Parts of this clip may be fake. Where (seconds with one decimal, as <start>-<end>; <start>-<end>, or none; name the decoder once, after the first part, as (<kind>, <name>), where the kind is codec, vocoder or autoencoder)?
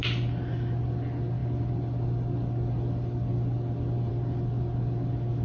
none